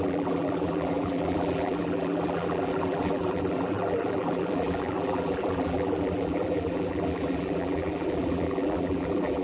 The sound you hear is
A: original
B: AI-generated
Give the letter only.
B